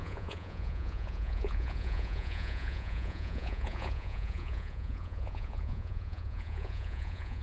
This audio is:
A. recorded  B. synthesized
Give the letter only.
B